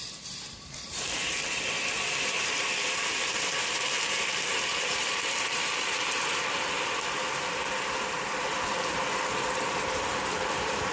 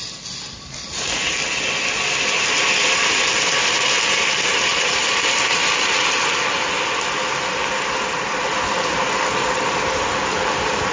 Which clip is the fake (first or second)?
first